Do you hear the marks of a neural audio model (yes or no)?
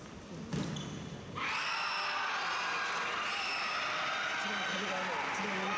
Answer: no